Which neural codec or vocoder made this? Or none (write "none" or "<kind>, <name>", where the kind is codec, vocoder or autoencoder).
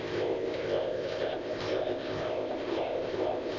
codec, ZipCodec